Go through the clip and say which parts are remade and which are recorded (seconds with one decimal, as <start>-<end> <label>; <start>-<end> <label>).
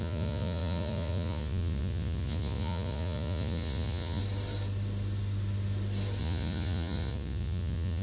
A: 0.0-4.2 remade; 4.2-6.2 recorded; 6.2-8.0 remade